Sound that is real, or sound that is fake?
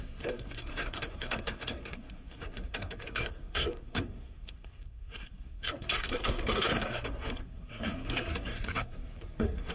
fake